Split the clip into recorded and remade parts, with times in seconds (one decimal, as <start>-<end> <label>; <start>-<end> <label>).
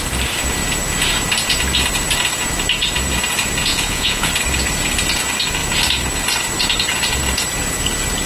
0.0-3.7 recorded; 3.7-4.3 remade; 4.3-8.3 recorded